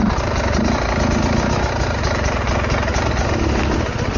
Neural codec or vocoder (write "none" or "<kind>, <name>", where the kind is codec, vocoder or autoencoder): none